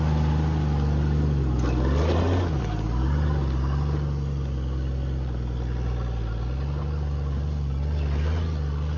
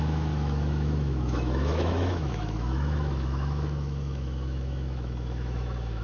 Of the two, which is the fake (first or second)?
second